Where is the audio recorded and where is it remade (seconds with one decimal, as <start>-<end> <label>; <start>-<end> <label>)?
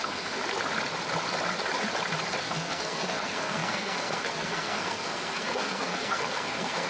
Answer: 0.0-0.4 remade; 0.4-2.4 recorded; 2.4-6.9 remade